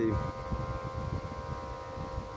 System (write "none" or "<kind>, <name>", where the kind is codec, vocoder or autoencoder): none